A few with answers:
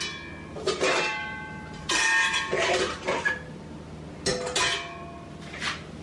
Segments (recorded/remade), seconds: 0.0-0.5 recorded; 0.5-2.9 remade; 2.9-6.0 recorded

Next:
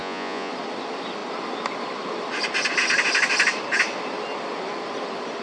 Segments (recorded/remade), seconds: 0.0-0.5 remade; 0.5-5.4 recorded